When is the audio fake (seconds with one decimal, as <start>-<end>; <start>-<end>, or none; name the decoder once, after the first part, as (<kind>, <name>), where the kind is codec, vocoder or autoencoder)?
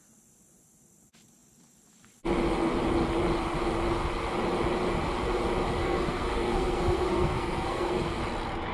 5.8-8.2 (codec, SNAC)